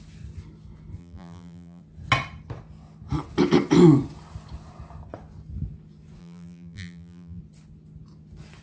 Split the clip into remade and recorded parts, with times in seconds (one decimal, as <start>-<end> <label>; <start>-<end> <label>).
0.0-1.0 recorded; 1.0-1.8 remade; 1.8-6.2 recorded; 6.2-7.4 remade; 7.4-8.6 recorded